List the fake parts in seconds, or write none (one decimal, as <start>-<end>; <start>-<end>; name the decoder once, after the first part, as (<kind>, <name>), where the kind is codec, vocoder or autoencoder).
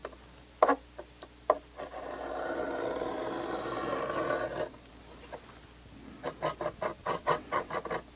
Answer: 7.0-7.7 (vocoder, WaveNeXt)